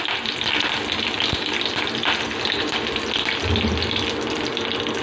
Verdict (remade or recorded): recorded